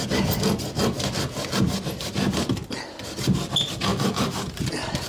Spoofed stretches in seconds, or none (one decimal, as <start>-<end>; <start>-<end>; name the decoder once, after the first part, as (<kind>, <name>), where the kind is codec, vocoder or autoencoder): none